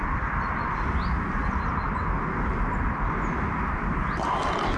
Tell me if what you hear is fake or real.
real